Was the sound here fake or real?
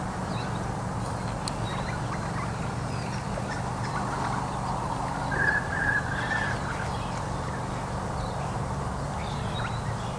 real